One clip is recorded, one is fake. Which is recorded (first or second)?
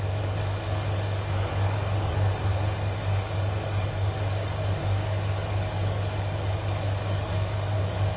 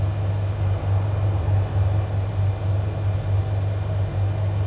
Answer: second